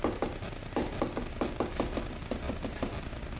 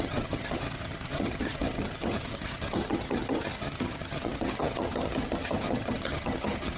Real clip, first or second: first